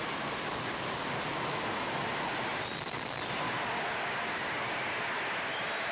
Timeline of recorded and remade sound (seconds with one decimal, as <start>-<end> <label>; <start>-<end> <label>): 0.0-5.9 recorded